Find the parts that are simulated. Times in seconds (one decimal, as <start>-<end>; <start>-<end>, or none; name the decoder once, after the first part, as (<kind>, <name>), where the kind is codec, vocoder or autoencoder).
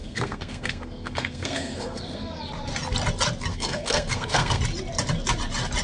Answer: 0.0-2.4 (codec, SNAC); 3.5-4.6